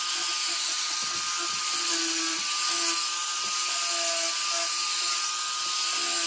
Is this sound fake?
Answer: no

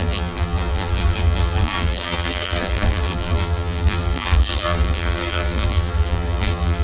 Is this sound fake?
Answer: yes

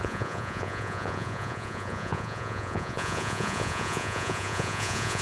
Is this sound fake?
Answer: yes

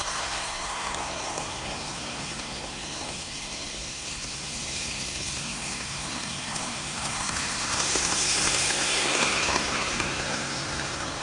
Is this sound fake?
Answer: yes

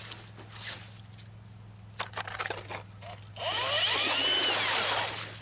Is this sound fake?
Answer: no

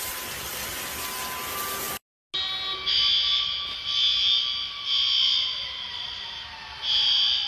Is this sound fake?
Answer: no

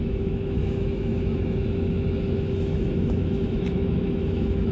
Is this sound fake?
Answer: yes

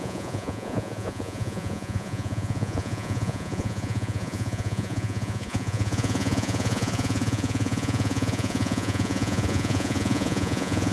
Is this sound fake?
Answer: yes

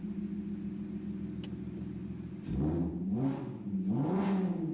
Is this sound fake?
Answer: no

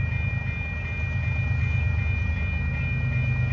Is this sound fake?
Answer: no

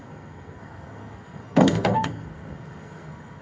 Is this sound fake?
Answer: yes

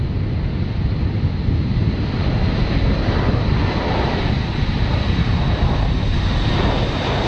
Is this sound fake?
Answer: no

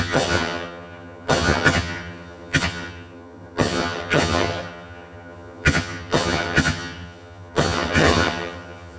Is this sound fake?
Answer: yes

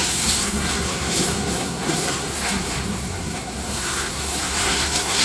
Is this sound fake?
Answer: yes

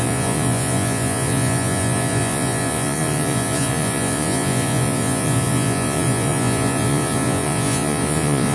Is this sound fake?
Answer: yes